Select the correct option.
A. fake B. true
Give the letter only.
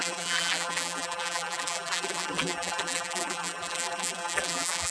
A